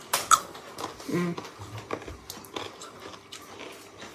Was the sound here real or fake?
real